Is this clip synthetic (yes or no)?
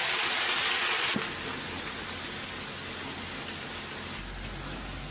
no